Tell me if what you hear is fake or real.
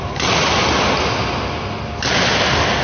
real